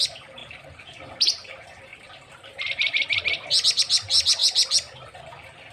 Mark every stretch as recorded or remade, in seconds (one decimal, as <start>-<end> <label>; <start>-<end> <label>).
0.0-5.7 recorded